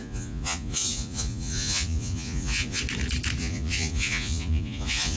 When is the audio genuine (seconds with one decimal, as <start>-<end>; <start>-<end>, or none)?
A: 2.8-3.4